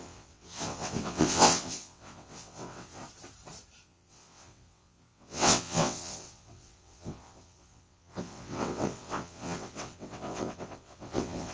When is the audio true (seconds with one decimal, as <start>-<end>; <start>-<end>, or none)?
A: 3.0-3.8